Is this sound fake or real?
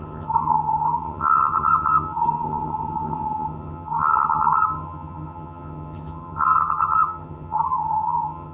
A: fake